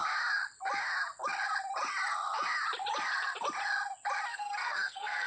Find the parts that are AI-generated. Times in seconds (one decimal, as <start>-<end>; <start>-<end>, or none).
4.3-5.3